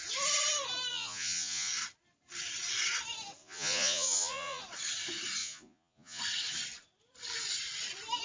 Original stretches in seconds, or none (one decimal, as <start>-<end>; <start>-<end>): 0.0-0.9; 1.7-3.4; 4.6-5.4; 6.2-8.2